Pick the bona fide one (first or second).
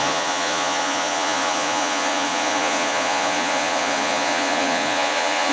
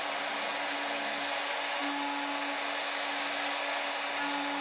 second